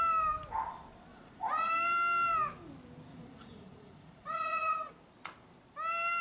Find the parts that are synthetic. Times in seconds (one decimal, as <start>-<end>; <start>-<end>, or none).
1.1-1.7; 3.1-4.9